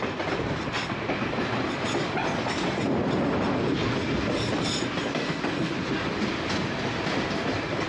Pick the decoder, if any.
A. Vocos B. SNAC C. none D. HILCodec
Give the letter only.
C